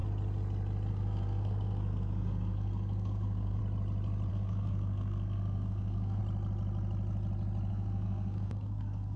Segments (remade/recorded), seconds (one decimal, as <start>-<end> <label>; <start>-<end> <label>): 0.0-0.9 recorded; 0.9-3.6 remade; 3.6-4.3 recorded; 4.3-6.2 remade; 6.2-7.7 recorded; 7.7-9.2 remade